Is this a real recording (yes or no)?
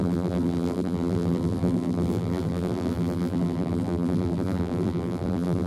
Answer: no